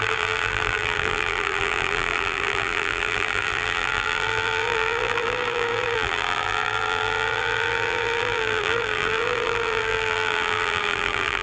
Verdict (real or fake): fake